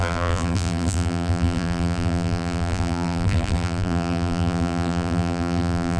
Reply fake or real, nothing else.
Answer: fake